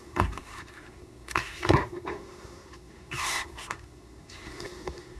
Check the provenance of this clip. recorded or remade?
remade